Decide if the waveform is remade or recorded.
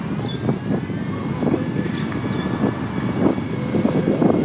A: recorded